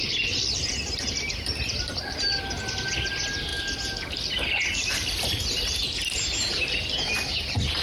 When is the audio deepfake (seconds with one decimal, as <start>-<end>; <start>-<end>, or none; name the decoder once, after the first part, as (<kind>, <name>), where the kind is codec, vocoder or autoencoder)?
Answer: none